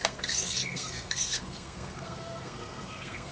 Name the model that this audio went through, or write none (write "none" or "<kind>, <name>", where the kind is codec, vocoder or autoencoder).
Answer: codec, SNAC